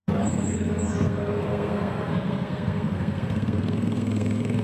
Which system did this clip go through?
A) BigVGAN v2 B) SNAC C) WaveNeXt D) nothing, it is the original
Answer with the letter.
B